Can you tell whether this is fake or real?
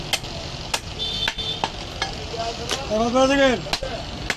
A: real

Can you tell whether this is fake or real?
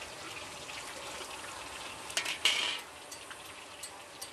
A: real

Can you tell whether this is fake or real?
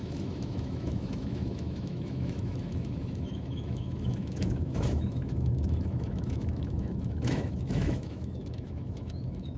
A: fake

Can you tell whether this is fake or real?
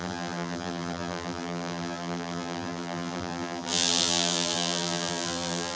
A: fake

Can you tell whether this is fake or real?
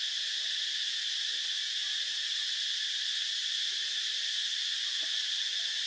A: real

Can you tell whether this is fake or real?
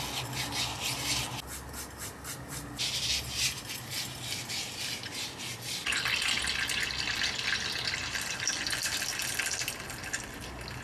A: real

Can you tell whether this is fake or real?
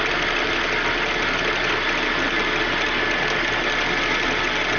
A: real